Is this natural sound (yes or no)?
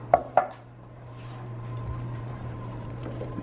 no